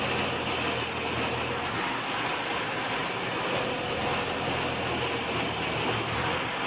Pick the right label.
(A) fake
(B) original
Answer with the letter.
B